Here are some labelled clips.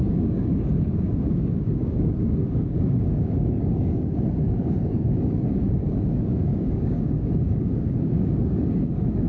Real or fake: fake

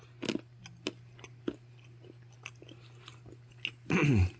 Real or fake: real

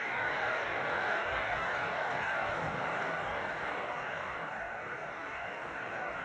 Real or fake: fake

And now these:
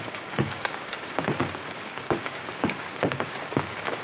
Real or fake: fake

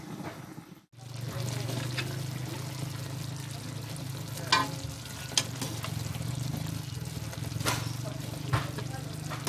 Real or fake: real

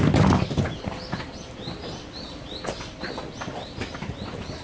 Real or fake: real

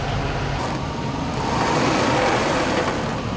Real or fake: real